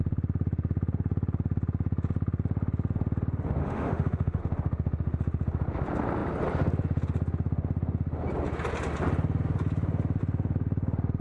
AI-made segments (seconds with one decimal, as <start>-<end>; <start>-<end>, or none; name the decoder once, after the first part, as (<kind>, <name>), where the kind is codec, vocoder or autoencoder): 3.6-4.4 (autoencoder, DAC-VAE)